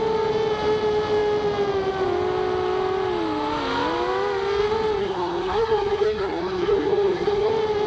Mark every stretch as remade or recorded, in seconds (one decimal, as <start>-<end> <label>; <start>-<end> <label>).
0.0-5.0 recorded; 5.0-7.5 remade; 7.5-7.9 recorded